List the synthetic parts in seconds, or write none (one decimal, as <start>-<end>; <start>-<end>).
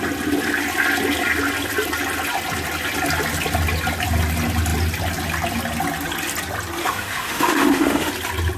6.8-8.1